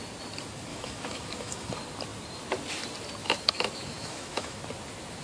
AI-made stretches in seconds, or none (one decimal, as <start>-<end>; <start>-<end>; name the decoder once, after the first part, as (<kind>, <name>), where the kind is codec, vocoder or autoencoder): 0.7-1.7 (autoencoder, DAC-VAE); 3.2-4.6